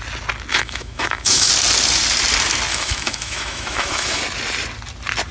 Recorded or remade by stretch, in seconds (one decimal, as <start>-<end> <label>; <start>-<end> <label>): 0.0-0.5 recorded; 0.5-1.5 remade; 1.5-2.7 recorded; 2.7-4.2 remade; 4.2-5.3 recorded